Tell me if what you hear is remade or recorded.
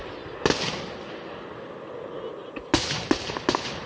recorded